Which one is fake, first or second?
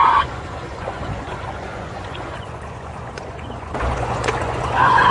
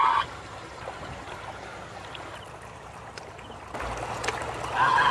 first